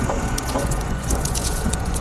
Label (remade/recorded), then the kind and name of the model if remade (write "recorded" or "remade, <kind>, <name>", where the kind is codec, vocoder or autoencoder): remade, vocoder, Vocos